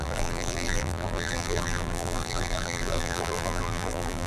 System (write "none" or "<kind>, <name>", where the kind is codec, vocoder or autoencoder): vocoder, BigVGAN v2